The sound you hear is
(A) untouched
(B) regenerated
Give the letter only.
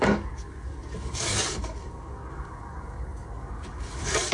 B